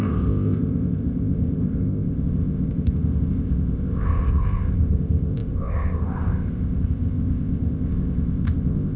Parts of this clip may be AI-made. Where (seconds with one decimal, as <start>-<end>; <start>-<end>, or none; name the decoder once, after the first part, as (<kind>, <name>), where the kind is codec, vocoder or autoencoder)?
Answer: 0.0-9.0 (codec, ZipCodec)